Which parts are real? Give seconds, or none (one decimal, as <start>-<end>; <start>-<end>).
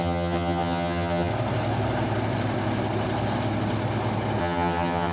1.3-4.4